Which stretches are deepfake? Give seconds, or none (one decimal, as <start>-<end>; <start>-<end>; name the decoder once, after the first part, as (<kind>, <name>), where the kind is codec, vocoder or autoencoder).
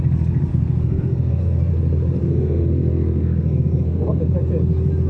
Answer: 0.5-1.7 (codec, SNAC); 2.2-4.2